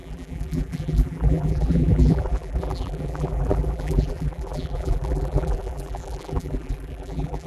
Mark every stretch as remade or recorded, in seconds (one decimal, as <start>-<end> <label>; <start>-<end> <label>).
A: 0.0-7.5 remade